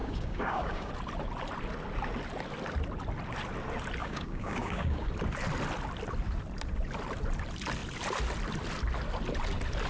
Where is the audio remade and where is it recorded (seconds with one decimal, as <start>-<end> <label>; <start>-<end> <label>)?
0.0-0.9 remade; 0.9-4.0 recorded; 4.0-5.1 remade; 5.1-9.9 recorded